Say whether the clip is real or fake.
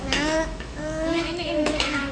fake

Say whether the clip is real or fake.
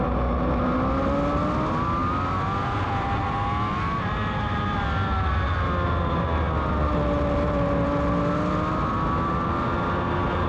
real